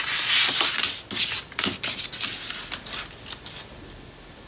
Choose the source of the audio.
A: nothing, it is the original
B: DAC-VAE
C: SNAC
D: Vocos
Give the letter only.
A